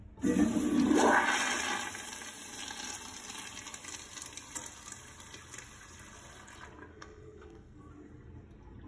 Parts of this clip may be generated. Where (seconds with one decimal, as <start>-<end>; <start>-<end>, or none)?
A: 6.9-7.9